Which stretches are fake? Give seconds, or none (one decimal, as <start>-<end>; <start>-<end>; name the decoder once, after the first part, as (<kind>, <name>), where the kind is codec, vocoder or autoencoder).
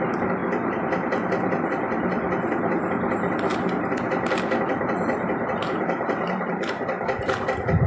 0.0-0.4 (vocoder, BigVGAN v2); 4.6-7.9